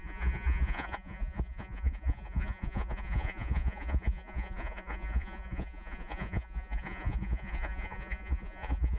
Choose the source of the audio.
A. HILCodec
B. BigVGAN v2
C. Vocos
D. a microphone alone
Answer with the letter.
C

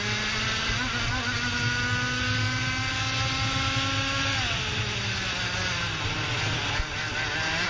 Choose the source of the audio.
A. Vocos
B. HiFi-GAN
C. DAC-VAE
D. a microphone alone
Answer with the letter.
D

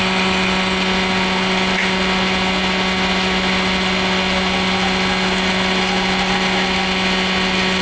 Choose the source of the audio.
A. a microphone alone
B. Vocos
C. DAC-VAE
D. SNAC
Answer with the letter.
A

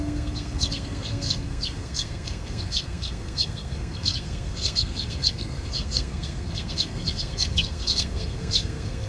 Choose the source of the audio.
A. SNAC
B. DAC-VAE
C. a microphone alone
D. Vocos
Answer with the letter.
A